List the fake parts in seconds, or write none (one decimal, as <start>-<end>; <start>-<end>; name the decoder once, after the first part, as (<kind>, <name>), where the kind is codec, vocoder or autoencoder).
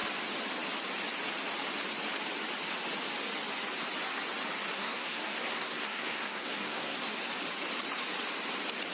4.7-7.3 (codec, SNAC)